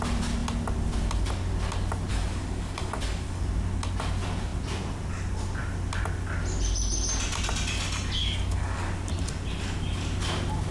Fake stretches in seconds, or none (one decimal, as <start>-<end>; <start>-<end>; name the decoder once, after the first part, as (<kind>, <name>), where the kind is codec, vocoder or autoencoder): 2.1-3.4 (codec, DAC); 8.2-8.9